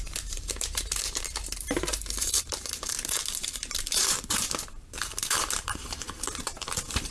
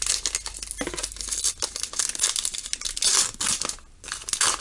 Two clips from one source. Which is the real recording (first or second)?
second